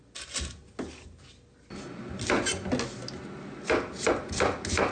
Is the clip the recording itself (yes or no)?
yes